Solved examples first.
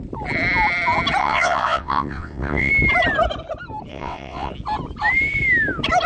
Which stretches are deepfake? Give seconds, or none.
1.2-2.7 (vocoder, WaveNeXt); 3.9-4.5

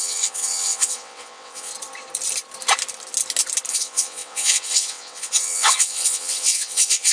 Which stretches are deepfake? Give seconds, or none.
0.0-1.7 (vocoder, WaveNeXt); 3.7-7.1

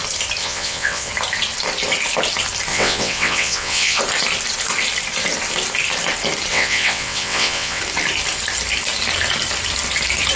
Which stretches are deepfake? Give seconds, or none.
0.4-1.1 (vocoder, WaveNeXt); 2.7-4.0; 6.5-7.8

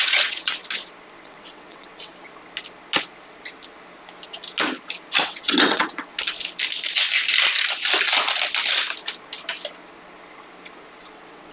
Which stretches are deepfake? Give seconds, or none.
0.0-0.6 (vocoder, WaveNeXt); 1.1-2.1; 5.2-6.1; 11.1-11.5

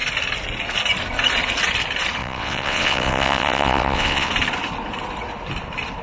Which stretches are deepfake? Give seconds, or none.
2.2-4.3 (vocoder, WaveNeXt)

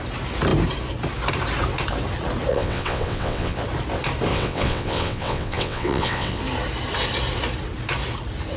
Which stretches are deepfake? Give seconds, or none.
2.5-3.6 (vocoder, WaveNeXt); 4.3-6.4

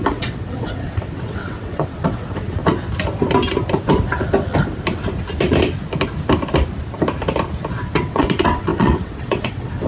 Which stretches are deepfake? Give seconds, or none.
0.0-2.6 (vocoder, WaveNeXt); 7.7-9.9